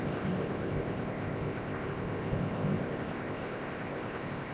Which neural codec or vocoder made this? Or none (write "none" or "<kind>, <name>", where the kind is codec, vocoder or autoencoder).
codec, ZipCodec